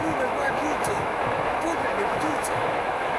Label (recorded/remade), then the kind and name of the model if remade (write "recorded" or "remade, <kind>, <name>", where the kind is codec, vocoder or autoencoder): remade, autoencoder, DAC-VAE